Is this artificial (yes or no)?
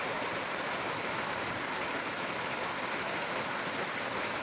no